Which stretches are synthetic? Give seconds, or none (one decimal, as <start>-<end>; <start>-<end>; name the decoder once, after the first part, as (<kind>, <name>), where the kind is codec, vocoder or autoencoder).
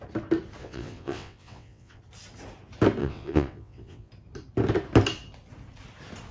0.6-2.0 (vocoder, WaveNeXt); 3.0-4.1